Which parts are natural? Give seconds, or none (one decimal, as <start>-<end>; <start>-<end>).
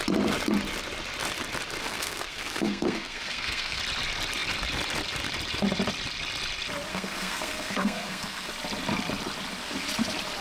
0.0-1.8; 3.8-6.9; 8.5-10.4